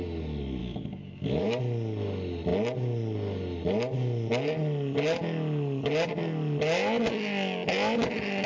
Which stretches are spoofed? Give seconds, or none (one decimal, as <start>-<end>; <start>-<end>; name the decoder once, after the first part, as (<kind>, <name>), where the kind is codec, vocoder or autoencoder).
0.6-1.6 (autoencoder, DAC-VAE)